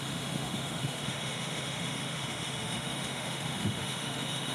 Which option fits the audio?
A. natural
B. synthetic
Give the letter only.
B